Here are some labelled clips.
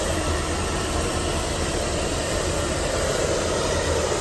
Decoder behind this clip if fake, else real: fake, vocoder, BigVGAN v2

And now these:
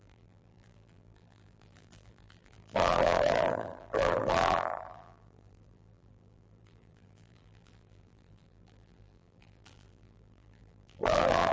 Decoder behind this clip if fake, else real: fake, vocoder, BigVGAN v2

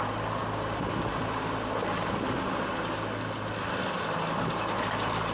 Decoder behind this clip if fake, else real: real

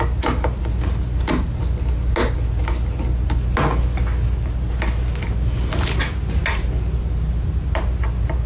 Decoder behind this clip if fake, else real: real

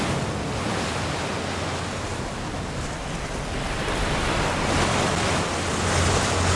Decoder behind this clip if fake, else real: real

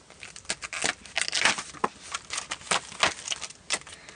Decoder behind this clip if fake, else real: real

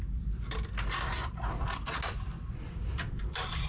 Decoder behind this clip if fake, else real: real